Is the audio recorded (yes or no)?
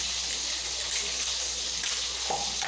yes